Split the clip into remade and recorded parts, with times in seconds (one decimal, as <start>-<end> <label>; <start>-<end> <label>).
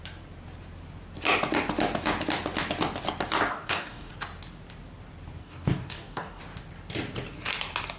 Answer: 0.0-3.5 recorded; 3.5-4.1 remade; 4.1-5.4 recorded; 5.4-6.4 remade; 6.4-8.0 recorded